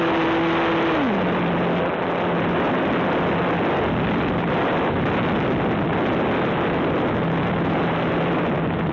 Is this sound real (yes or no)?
yes